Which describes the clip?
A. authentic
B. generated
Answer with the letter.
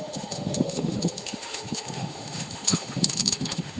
B